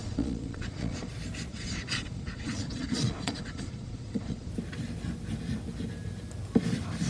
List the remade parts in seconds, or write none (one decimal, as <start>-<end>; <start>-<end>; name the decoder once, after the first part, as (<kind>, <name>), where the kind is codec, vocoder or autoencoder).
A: 0.0-1.1 (vocoder, Vocos); 1.5-4.5